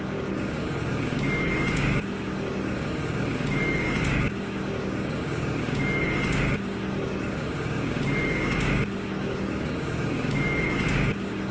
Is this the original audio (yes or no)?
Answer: no